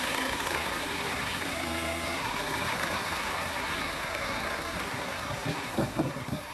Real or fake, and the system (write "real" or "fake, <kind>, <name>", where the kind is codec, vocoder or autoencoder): fake, codec, SNAC